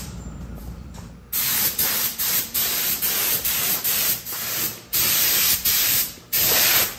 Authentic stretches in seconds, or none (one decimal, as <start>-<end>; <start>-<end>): none